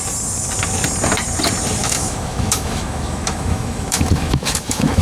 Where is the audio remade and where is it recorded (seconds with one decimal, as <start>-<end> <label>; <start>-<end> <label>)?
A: 0.0-1.8 recorded; 1.8-5.0 remade